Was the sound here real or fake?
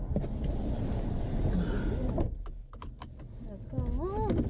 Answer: real